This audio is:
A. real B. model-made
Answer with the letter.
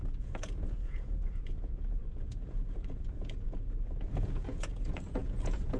B